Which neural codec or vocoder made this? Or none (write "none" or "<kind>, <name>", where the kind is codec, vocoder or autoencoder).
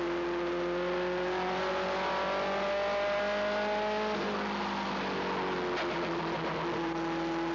none